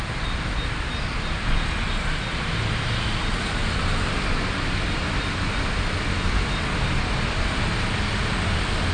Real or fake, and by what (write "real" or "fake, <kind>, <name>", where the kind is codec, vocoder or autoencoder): real